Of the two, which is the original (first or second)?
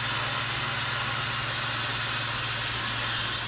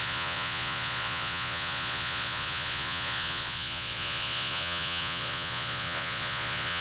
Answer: first